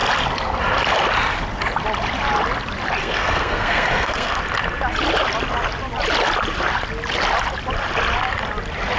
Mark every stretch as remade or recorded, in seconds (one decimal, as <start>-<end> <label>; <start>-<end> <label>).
0.0-3.0 recorded; 3.0-4.4 remade; 4.4-9.0 recorded